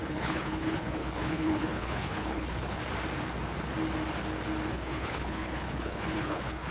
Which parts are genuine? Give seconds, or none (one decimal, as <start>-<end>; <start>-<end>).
2.8-4.7

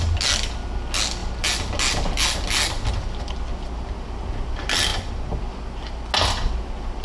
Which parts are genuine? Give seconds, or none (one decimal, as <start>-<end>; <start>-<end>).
0.0-7.0

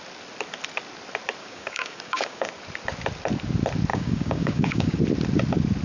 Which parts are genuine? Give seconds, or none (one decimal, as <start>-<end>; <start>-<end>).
0.0-1.4; 2.5-3.9; 5.0-5.8

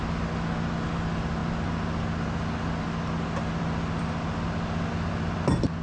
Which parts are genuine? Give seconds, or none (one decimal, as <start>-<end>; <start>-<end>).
0.0-5.8

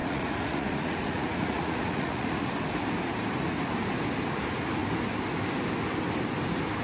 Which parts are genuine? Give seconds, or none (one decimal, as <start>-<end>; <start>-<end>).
2.5-6.8

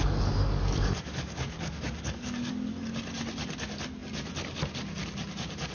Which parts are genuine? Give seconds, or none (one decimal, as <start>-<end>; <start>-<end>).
2.5-5.7

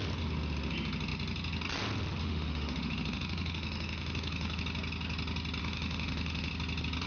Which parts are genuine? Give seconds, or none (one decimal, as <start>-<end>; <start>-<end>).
0.0-2.2; 4.6-5.6; 6.5-7.1